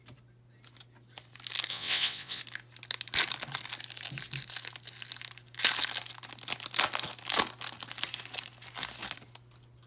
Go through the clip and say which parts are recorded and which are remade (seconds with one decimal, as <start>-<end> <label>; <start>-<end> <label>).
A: 0.0-1.7 recorded; 1.7-2.4 remade; 2.4-9.9 recorded